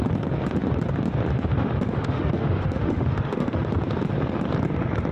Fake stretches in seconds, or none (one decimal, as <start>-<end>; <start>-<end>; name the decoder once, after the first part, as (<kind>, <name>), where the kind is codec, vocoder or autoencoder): 1.5-3.7 (autoencoder, DAC-VAE)